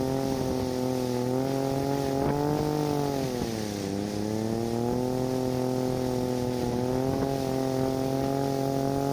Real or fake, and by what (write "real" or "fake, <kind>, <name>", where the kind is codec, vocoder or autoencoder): real